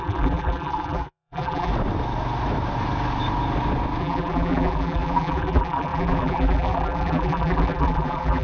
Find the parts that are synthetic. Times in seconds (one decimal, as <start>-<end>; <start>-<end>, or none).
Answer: 0.0-1.7; 4.0-8.4